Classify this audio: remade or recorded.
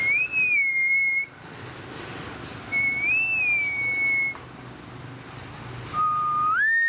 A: recorded